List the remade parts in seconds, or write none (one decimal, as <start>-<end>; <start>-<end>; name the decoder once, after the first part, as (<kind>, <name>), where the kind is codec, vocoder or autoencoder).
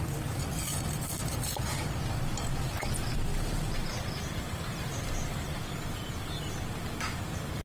3.3-5.6 (vocoder, BigVGAN v2)